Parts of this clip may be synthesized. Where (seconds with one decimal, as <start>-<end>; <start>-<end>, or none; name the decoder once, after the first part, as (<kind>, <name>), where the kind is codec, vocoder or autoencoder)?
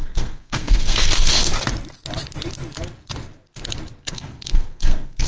0.0-1.5 (codec, SNAC); 4.1-5.3